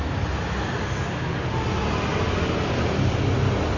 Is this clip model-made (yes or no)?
no